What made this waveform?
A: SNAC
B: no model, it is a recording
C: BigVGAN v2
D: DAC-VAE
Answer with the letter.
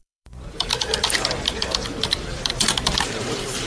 C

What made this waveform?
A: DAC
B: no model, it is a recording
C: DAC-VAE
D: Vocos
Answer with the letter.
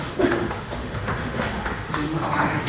C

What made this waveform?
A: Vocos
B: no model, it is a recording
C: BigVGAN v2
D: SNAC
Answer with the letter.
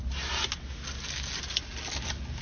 B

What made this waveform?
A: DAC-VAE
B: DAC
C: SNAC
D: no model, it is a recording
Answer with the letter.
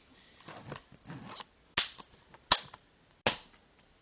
D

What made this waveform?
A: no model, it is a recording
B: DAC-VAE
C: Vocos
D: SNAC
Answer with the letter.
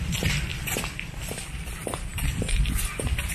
A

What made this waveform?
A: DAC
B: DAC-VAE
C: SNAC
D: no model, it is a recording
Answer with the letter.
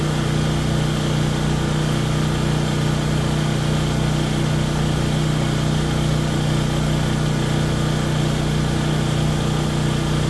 D